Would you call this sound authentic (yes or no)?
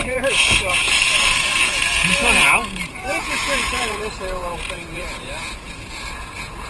no